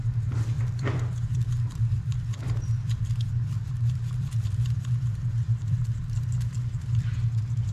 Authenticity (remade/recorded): remade